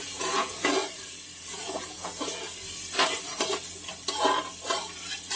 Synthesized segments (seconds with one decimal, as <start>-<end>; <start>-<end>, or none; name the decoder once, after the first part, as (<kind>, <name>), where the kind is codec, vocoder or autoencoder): 0.0-0.8 (vocoder, Vocos); 1.5-2.1